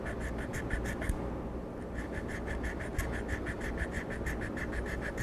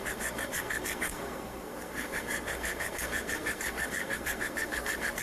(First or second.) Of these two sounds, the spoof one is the second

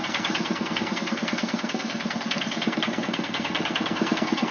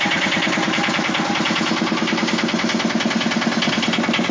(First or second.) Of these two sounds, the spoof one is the first